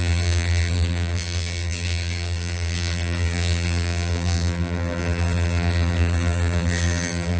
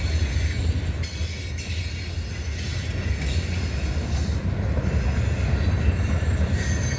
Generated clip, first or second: first